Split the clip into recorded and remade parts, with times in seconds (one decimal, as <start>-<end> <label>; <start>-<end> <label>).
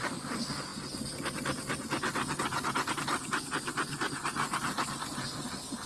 0.0-5.9 recorded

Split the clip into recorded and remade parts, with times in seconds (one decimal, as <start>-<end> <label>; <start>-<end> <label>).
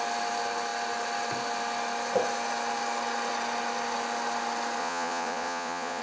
0.0-4.8 recorded; 4.8-6.0 remade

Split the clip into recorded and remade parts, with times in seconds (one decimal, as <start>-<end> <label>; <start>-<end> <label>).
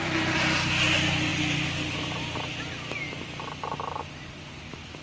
0.0-5.0 recorded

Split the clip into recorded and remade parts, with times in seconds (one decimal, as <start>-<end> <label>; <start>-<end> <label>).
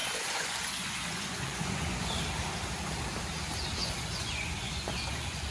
0.0-2.1 remade; 2.1-3.8 recorded; 3.8-5.5 remade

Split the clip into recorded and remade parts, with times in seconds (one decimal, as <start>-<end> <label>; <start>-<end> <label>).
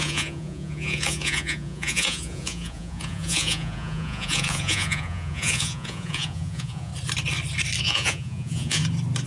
0.0-6.9 remade; 6.9-7.8 recorded; 7.8-8.8 remade; 8.8-9.3 recorded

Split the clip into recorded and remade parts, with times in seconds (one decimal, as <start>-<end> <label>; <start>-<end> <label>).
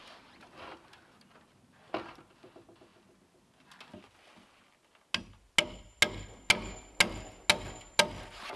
0.0-8.6 recorded